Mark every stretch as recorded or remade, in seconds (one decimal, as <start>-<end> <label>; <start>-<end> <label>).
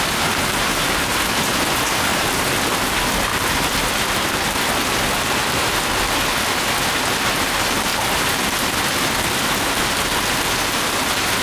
0.0-2.1 recorded; 2.1-2.6 remade; 2.6-7.9 recorded; 7.9-8.7 remade; 8.7-11.4 recorded